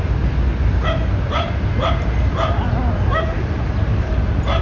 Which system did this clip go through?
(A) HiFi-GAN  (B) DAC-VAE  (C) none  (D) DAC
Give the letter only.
C